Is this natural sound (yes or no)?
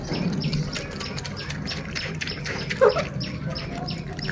yes